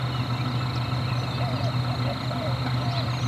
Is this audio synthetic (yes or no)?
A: no